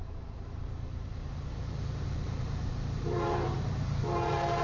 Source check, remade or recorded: remade